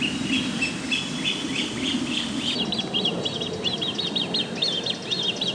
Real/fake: real